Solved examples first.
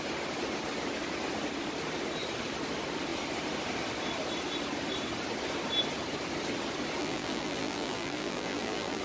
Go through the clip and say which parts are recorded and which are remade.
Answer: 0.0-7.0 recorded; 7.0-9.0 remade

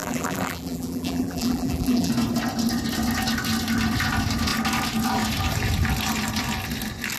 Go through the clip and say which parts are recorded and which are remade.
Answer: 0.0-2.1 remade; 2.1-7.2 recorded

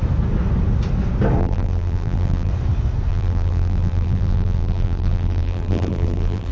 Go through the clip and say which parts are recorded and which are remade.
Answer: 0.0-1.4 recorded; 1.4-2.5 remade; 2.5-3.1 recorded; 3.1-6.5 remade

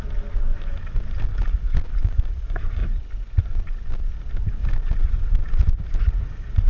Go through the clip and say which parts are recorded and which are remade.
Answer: 0.0-1.3 recorded; 1.3-1.9 remade; 1.9-2.8 recorded; 2.8-3.4 remade; 3.4-4.6 recorded; 4.6-5.6 remade; 5.6-6.7 recorded

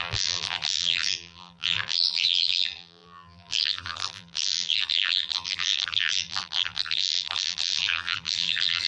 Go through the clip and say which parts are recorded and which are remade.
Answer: 0.0-8.9 remade

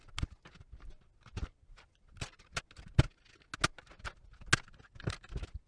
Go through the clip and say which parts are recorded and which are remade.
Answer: 0.0-5.7 recorded

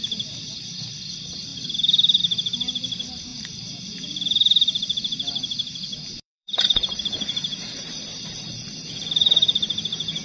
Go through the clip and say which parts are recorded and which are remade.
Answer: 0.0-3.3 recorded; 3.3-8.1 remade; 8.1-10.2 recorded

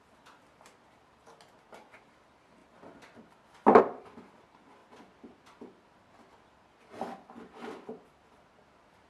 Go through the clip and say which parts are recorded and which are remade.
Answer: 0.0-9.1 recorded